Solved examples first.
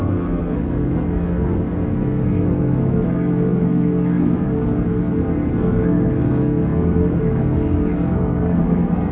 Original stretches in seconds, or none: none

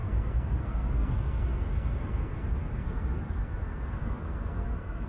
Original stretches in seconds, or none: none

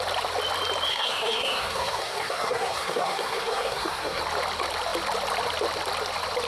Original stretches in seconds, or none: 0.0-0.9; 4.2-6.5

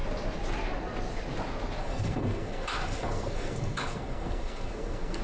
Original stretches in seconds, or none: 0.0-1.8

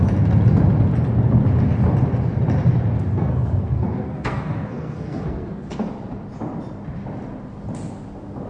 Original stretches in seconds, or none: 0.0-3.1; 5.9-8.5

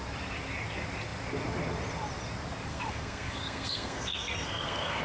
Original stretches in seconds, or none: 0.0-2.7

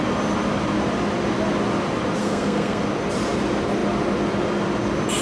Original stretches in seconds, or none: 0.0-2.2; 2.8-5.2

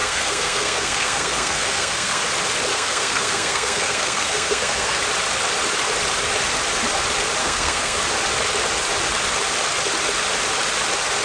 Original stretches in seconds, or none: 2.2-2.7; 5.0-7.4; 8.0-11.2